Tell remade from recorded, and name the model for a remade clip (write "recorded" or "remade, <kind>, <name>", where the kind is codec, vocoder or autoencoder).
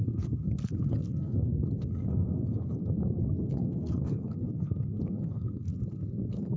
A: remade, codec, SNAC